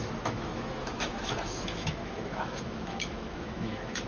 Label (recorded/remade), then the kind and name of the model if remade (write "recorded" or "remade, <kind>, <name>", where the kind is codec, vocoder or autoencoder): remade, autoencoder, DAC-VAE